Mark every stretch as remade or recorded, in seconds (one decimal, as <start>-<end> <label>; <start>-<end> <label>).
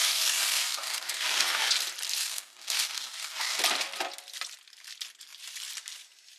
0.0-1.7 remade; 1.7-2.2 recorded; 2.2-3.6 remade; 3.6-6.4 recorded